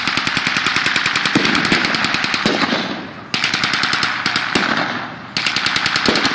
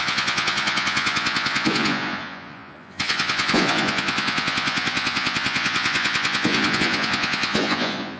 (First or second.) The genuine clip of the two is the first